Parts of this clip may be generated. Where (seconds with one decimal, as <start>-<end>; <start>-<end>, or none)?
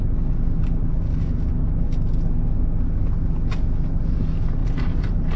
4.6-5.4